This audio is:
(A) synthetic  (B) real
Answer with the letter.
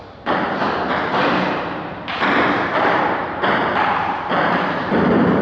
A